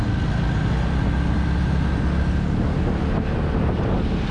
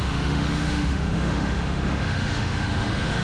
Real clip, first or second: first